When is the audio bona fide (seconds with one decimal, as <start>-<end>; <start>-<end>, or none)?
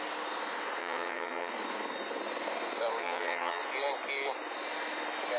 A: 0.0-0.8; 1.5-3.0; 3.6-5.4